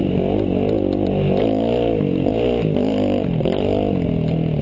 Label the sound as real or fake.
real